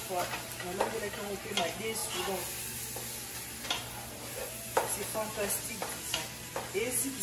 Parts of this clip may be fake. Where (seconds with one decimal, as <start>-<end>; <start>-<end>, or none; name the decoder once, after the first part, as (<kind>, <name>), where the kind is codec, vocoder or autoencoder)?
none